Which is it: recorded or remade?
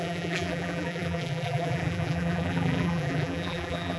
remade